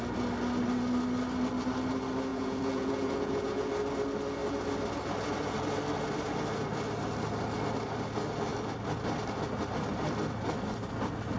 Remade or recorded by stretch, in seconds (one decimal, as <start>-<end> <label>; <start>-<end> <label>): 0.0-2.3 recorded; 2.3-3.7 remade; 3.7-11.4 recorded